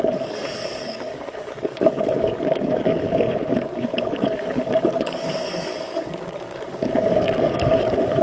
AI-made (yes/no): yes